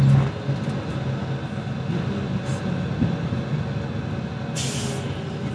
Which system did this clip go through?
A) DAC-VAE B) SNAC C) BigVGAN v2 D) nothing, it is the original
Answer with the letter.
D